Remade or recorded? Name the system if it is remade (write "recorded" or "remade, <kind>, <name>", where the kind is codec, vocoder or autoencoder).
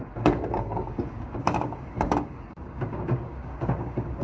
remade, codec, DAC